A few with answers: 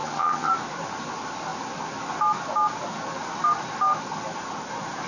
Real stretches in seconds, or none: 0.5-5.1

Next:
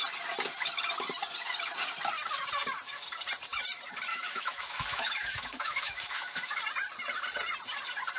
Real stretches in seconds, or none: 0.0-4.1; 6.6-8.2

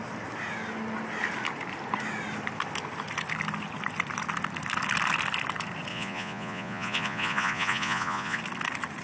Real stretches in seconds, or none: 0.0-5.9; 8.4-9.0

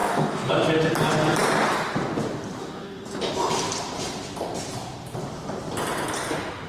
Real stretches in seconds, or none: 0.5-2.6; 3.3-6.7